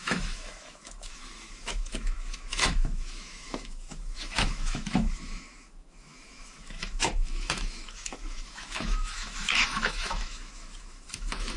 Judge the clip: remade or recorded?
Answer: remade